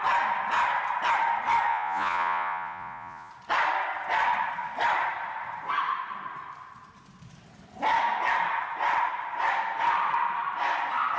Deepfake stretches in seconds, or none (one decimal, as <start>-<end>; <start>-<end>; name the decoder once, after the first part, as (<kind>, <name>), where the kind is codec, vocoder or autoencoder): 1.7-3.3 (vocoder, Vocos)